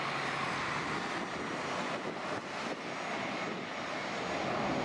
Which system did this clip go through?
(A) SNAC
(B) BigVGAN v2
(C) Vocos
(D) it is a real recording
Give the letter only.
D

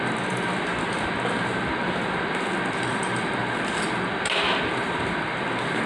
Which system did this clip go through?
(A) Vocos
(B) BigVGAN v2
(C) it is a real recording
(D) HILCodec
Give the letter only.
C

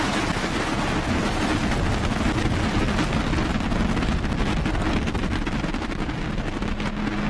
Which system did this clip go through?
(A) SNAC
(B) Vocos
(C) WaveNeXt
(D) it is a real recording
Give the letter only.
D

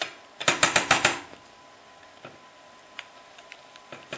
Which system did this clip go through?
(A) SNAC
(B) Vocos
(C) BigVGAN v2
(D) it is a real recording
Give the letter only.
D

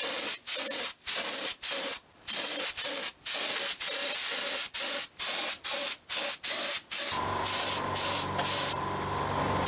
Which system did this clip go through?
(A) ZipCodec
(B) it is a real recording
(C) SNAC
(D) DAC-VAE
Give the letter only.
B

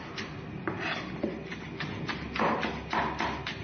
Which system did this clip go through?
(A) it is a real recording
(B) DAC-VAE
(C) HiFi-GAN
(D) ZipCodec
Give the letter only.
A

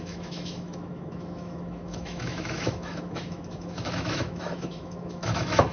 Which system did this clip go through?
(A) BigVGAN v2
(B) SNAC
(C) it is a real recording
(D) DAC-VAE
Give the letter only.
D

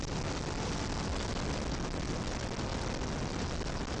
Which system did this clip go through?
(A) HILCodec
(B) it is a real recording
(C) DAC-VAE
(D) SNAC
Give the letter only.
B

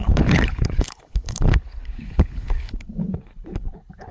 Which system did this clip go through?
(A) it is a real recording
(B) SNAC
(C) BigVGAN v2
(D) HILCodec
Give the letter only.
D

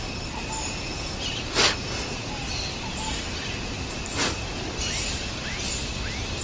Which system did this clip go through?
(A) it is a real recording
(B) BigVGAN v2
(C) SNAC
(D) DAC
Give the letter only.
A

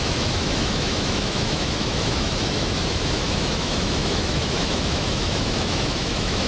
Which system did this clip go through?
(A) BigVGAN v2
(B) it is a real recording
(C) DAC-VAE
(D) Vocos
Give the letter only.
C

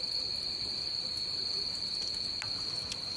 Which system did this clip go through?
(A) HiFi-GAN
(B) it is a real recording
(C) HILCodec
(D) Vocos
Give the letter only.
B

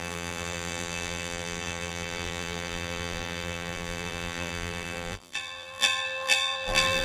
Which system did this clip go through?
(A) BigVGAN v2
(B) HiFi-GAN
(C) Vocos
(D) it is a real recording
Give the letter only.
A